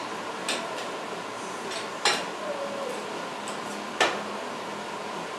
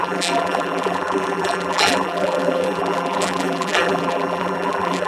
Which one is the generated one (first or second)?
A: second